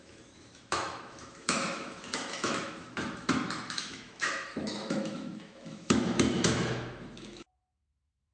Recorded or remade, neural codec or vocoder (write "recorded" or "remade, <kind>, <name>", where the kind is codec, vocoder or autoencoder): remade, autoencoder, DAC-VAE